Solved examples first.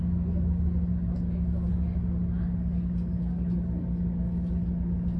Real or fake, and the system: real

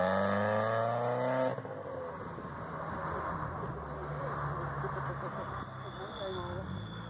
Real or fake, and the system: real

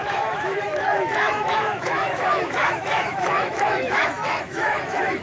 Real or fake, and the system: fake, autoencoder, DAC-VAE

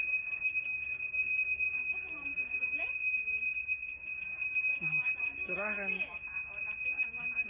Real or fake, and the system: fake, vocoder, Vocos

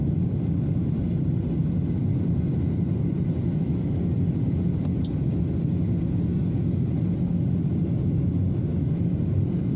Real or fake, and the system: real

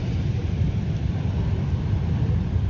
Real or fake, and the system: fake, vocoder, BigVGAN v2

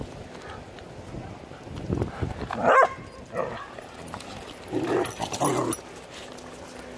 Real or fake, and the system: real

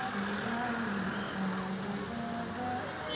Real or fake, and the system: real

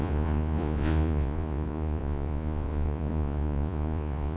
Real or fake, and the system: fake, vocoder, Vocos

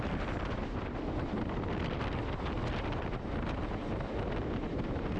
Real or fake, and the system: real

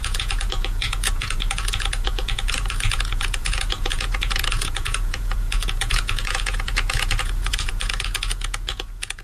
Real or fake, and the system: fake, vocoder, Vocos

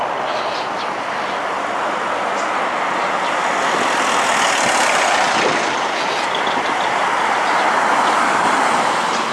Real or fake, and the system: real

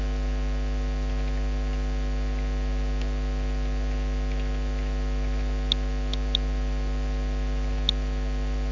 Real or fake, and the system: real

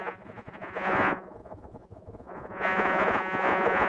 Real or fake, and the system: fake, vocoder, Vocos